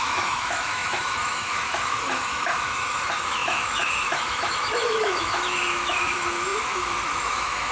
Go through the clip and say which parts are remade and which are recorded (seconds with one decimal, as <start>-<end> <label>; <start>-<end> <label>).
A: 0.0-7.7 remade